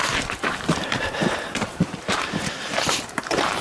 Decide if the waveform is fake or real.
fake